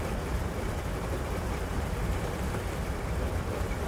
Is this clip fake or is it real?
fake